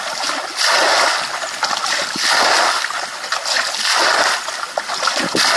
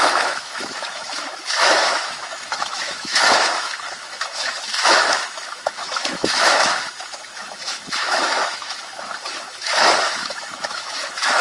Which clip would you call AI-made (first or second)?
second